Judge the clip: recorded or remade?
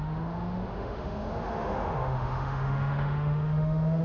remade